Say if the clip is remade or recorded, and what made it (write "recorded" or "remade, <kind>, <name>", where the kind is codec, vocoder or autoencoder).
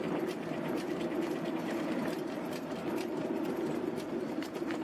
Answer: remade, vocoder, BigVGAN v2